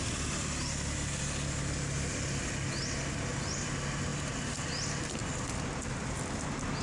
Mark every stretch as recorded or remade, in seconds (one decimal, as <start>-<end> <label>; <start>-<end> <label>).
0.0-6.8 recorded